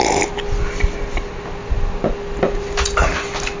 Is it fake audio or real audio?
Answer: real